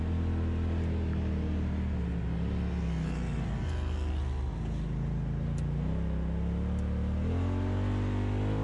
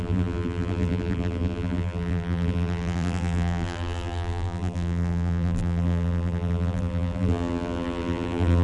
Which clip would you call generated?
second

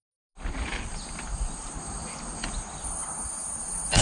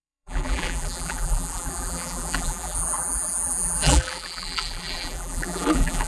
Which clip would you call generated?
second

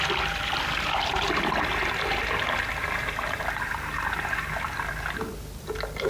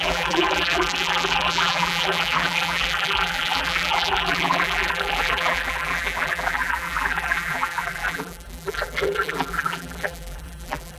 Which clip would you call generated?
second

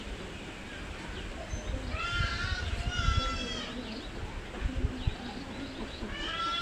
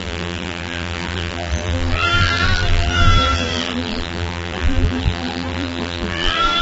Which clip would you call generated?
second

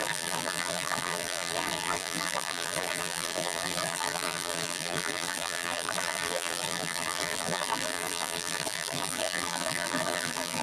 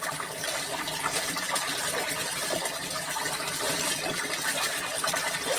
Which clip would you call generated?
first